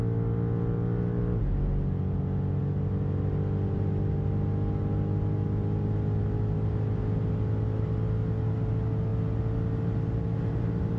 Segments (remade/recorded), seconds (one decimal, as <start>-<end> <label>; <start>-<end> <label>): 0.0-11.0 recorded